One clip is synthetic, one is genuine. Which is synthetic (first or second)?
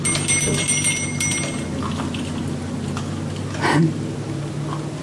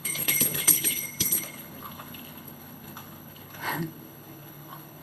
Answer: second